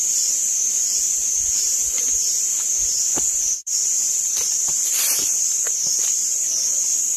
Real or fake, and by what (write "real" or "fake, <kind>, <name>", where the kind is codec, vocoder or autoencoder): fake, vocoder, BigVGAN v2